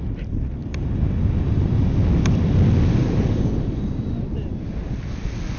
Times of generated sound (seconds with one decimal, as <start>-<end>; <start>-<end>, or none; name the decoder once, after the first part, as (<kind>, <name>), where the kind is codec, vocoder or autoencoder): none